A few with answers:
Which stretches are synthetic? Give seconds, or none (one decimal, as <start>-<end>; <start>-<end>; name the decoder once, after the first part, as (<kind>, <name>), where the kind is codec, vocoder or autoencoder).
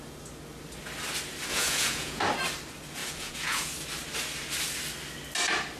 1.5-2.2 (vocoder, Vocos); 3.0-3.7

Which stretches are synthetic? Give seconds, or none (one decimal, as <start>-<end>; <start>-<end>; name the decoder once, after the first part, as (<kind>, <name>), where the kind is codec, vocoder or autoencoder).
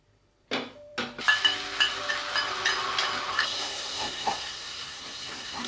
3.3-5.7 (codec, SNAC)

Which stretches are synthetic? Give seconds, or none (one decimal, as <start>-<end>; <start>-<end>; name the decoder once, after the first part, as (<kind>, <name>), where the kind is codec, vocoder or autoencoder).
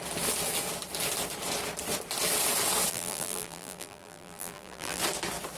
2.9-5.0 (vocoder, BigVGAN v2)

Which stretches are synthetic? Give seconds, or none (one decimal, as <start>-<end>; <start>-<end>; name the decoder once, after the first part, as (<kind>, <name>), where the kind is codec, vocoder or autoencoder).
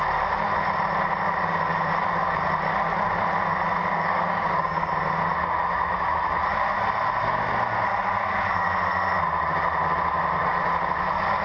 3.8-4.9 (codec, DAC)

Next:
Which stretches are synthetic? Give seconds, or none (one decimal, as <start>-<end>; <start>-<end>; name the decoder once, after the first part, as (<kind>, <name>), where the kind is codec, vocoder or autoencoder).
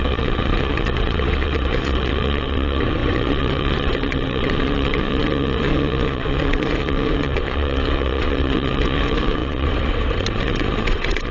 0.0-11.3 (vocoder, WaveNeXt)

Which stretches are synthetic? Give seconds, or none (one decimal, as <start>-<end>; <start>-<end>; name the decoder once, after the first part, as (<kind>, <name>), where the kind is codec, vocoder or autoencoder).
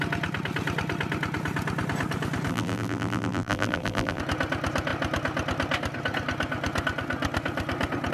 2.5-4.2 (vocoder, BigVGAN v2)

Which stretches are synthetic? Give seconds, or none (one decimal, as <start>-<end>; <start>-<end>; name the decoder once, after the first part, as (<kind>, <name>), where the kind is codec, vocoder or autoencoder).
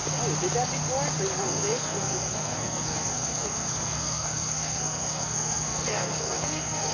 1.4-6.9 (codec, SNAC)